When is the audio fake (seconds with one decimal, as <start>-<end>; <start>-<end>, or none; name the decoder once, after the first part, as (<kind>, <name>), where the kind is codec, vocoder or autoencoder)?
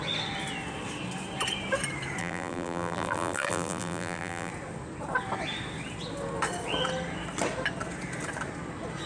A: 2.2-4.5 (vocoder, BigVGAN v2)